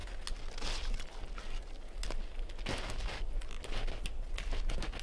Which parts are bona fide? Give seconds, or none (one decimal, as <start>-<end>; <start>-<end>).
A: 0.0-5.0